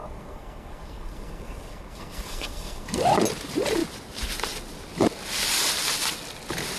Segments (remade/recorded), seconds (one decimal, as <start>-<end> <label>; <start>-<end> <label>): 0.0-3.0 remade; 3.0-6.8 recorded